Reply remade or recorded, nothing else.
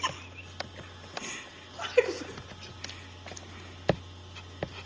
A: recorded